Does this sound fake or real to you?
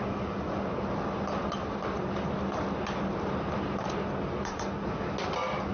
real